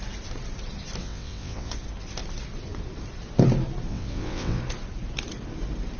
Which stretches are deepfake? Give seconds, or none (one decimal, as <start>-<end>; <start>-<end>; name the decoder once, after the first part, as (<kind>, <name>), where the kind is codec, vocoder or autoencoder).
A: 1.0-1.7 (vocoder, WaveNeXt); 3.9-4.6